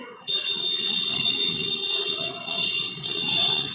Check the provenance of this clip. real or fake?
fake